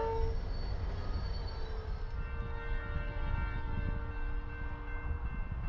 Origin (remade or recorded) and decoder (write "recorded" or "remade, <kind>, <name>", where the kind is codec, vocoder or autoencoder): recorded